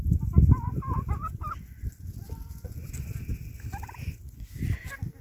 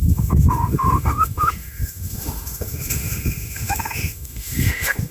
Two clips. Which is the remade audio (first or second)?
second